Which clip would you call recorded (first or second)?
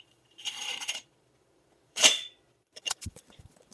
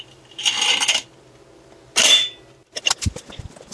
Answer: second